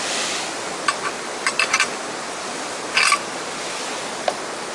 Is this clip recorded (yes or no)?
yes